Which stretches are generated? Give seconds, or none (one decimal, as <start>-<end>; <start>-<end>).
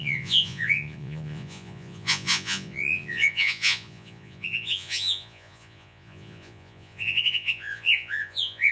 0.0-8.7